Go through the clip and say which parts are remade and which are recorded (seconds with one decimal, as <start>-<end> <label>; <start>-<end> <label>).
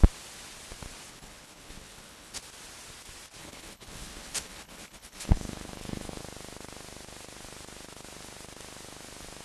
0.0-1.1 recorded; 1.1-2.4 remade; 2.4-3.4 recorded; 3.4-6.2 remade; 6.2-9.4 recorded